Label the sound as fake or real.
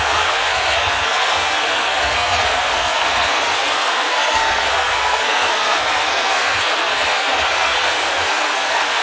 fake